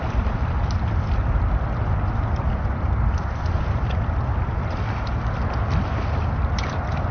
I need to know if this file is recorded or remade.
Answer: recorded